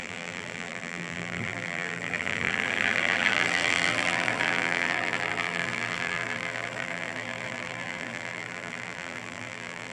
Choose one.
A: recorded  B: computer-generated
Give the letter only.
B